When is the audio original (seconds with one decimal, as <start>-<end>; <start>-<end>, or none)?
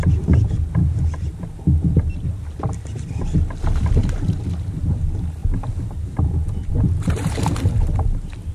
0.0-5.4; 6.7-8.5